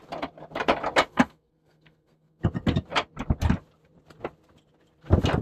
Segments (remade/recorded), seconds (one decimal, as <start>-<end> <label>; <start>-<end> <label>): 0.0-1.1 recorded; 1.1-2.4 remade; 2.4-5.4 recorded